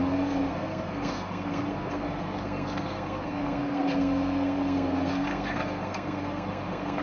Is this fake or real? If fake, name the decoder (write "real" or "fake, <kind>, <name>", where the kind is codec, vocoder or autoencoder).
fake, codec, SNAC